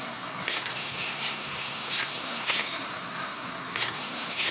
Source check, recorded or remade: remade